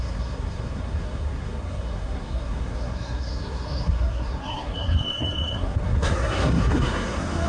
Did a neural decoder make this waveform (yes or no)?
yes